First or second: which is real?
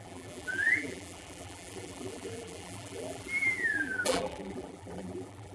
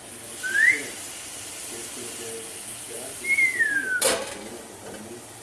second